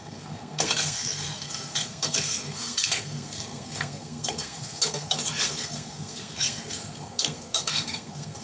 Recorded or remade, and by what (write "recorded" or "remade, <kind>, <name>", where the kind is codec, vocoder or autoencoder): remade, codec, SNAC